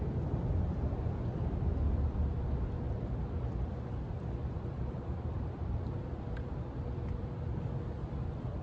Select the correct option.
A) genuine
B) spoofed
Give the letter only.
B